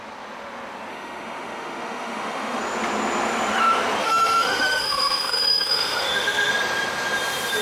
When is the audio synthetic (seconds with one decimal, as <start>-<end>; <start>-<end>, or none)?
0.9-2.6; 4.0-6.5